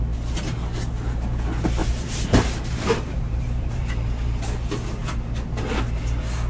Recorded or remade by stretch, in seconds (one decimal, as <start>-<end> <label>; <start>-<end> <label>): 0.0-1.8 recorded; 1.8-4.4 remade; 4.4-6.5 recorded